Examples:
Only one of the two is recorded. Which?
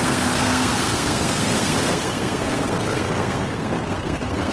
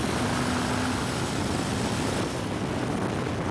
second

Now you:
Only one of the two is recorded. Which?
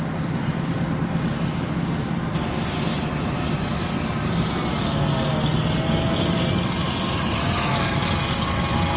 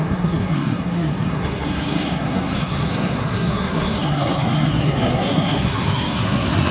first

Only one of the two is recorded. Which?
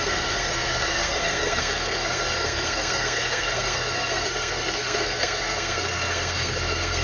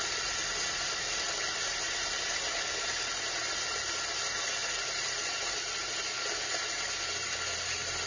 second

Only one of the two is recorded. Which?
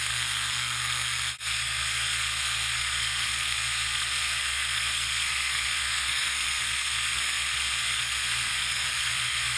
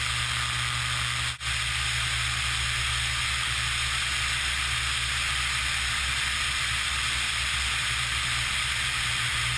second